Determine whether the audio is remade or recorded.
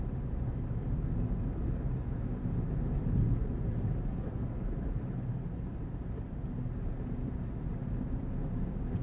recorded